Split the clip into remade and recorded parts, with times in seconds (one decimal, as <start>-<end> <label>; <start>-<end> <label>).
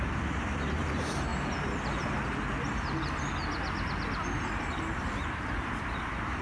0.0-1.3 remade; 1.3-4.7 recorded; 4.7-6.4 remade